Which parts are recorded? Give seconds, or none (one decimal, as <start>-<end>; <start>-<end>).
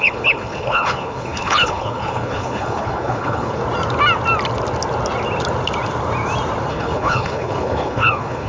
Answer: 3.6-6.7